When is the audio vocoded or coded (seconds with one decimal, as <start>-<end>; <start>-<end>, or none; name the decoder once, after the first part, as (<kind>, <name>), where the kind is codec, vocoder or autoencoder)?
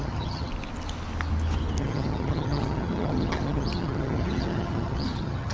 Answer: 0.0-0.5 (vocoder, HiFi-GAN); 1.8-5.5